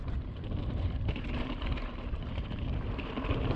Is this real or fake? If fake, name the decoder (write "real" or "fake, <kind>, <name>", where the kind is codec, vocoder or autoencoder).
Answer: fake, vocoder, BigVGAN v2